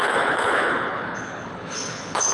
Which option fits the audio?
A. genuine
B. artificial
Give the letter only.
B